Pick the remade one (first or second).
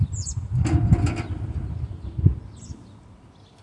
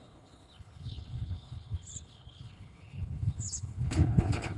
second